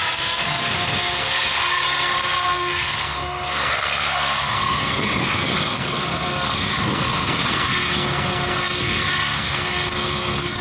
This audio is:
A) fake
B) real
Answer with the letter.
A